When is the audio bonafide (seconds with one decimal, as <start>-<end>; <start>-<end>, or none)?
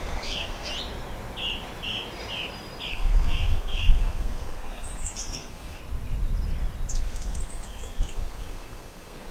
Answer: 0.7-2.9; 5.8-6.9